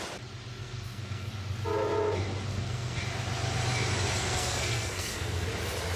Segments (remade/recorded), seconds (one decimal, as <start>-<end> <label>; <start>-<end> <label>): 0.0-0.6 recorded; 0.6-1.3 remade; 1.3-2.5 recorded; 2.5-3.0 remade; 3.0-4.2 recorded; 4.2-5.5 remade; 5.5-6.0 recorded